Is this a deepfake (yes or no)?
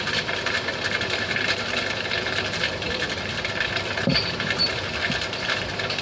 yes